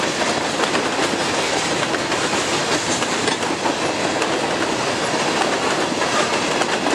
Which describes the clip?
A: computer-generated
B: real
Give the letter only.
B